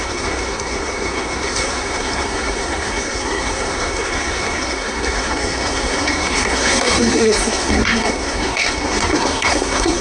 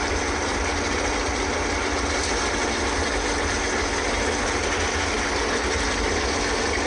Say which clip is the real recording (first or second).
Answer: second